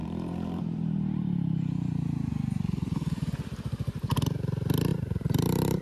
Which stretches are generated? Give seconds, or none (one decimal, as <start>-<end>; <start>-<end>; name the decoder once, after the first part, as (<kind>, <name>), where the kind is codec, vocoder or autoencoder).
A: 0.0-2.3 (vocoder, BigVGAN v2); 4.9-5.8